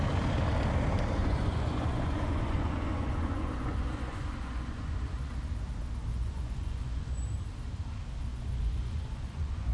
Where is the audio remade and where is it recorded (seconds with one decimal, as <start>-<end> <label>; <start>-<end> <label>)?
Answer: 0.0-1.2 recorded; 1.2-5.2 remade; 5.2-6.1 recorded; 6.1-7.1 remade; 7.1-8.3 recorded; 8.3-9.7 remade